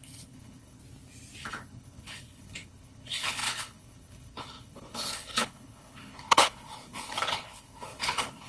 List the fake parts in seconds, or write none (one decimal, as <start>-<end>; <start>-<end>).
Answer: 0.0-0.8; 1.4-8.5